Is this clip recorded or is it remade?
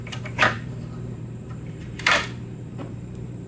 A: remade